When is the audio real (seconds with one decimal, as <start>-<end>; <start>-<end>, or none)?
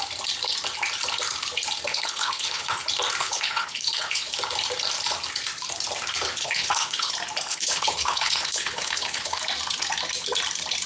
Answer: 0.0-1.9; 2.8-3.2; 4.3-6.4; 7.1-7.5; 9.4-10.9